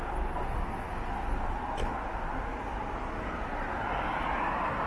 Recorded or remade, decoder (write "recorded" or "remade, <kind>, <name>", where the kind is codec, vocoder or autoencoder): recorded